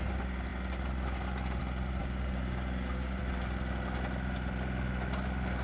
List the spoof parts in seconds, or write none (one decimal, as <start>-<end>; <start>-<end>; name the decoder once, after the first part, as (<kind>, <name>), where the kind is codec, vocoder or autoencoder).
2.0-3.2 (codec, DAC)